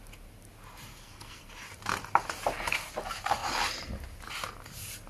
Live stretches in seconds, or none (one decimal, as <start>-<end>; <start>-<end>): 0.0-0.9; 1.5-5.1